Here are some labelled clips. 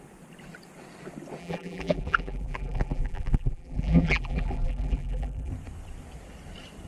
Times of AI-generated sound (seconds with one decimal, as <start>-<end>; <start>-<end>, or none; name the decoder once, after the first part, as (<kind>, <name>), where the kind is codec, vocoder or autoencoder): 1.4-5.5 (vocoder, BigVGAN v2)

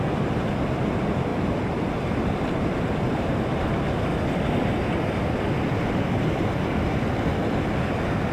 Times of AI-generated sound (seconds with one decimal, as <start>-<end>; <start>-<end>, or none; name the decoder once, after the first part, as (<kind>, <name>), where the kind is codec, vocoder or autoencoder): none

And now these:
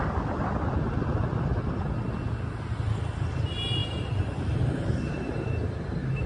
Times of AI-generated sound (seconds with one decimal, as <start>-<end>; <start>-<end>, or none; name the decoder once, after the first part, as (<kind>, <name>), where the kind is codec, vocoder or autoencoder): 3.8-6.3 (vocoder, BigVGAN v2)